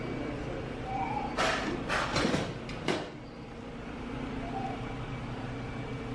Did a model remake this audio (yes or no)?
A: yes